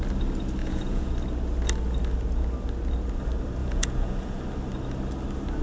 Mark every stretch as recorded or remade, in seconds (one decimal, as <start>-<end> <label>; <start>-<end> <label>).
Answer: 0.0-0.6 recorded; 0.6-1.1 remade; 1.1-3.6 recorded; 3.6-4.4 remade; 4.4-5.6 recorded